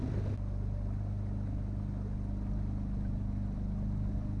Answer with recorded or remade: recorded